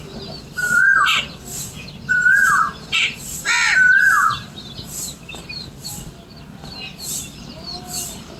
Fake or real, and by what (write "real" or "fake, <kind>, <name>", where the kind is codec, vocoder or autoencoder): fake, vocoder, BigVGAN v2